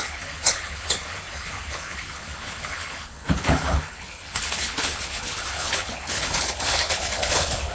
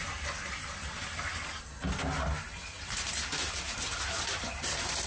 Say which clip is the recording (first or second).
second